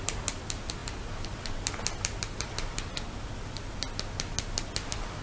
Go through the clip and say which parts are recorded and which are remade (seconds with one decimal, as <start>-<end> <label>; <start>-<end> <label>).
0.0-5.2 recorded